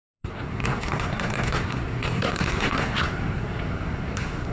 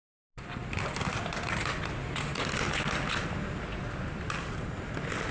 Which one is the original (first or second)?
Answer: second